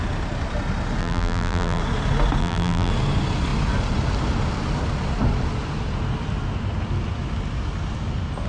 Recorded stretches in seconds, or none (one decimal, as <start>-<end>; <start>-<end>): 0.0-1.0; 1.8-2.4; 2.9-8.5